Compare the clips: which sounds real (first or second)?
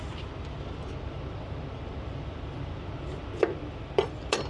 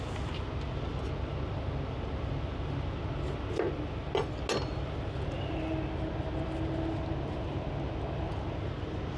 second